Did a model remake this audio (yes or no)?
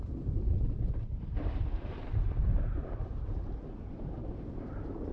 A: yes